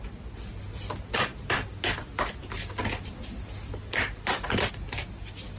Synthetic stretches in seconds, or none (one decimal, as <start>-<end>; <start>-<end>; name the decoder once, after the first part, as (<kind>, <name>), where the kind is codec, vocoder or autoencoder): none